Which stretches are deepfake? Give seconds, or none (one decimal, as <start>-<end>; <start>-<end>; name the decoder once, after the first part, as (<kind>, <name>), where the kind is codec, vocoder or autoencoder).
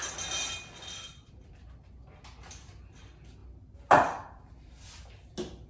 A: none